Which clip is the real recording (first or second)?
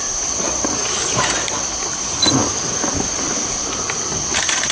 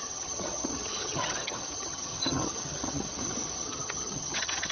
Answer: first